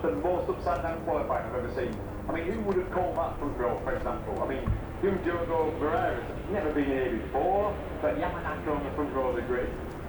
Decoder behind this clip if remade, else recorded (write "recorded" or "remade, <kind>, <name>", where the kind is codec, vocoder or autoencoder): recorded